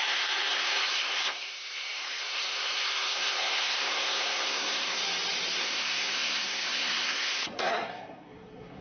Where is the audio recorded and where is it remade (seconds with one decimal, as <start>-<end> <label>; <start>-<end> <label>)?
0.0-5.0 remade; 5.0-5.6 recorded; 5.6-8.8 remade